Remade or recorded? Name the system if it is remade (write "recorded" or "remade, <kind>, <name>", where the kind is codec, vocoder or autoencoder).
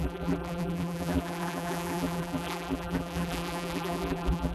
remade, vocoder, BigVGAN v2